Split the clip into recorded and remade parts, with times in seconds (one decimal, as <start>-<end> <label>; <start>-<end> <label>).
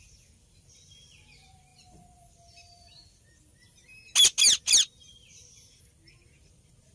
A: 0.0-6.9 recorded